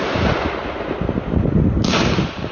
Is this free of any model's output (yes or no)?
yes